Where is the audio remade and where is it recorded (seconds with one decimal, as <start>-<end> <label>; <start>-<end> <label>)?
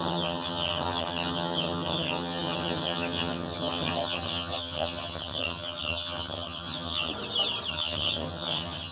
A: 0.0-7.1 remade; 7.1-7.7 recorded; 7.7-8.9 remade